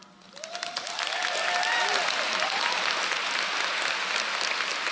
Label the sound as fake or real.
real